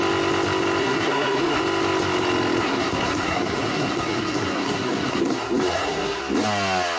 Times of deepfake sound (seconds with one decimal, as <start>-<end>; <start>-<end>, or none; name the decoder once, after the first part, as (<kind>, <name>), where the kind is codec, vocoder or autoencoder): 0.8-1.6 (codec, SNAC); 2.6-6.2